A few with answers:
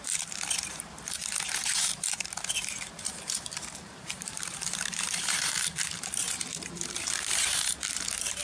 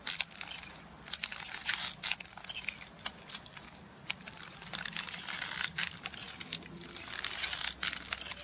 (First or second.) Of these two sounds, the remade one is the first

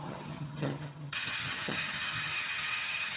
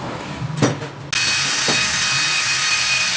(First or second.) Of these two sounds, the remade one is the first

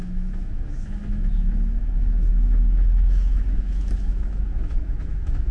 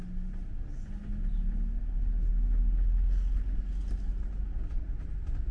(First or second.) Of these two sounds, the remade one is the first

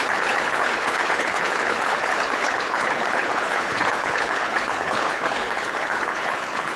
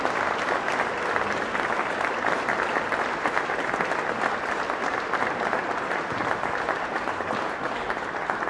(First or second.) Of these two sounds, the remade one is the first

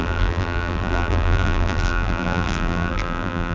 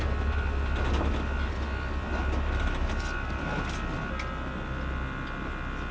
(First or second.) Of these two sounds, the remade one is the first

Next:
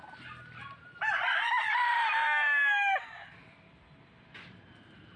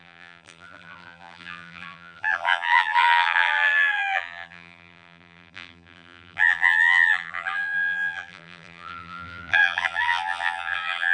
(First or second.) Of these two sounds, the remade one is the second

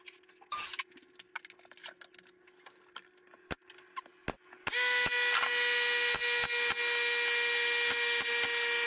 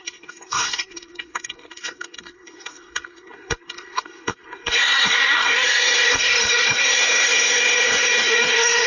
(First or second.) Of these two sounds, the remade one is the second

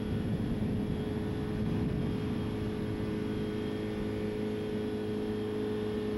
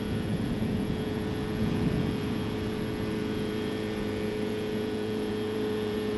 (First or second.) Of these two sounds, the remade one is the second